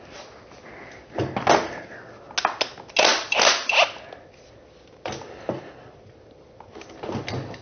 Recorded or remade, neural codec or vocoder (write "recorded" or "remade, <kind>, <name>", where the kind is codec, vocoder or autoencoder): recorded